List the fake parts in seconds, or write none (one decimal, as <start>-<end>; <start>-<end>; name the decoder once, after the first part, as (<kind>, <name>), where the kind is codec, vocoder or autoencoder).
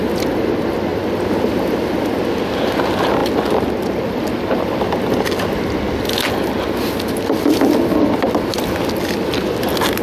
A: none